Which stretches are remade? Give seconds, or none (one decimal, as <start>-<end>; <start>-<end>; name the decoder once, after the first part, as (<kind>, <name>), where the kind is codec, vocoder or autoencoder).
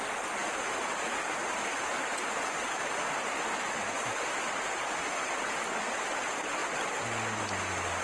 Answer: none